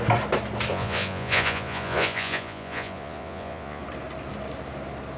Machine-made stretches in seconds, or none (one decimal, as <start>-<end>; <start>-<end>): 0.7-3.8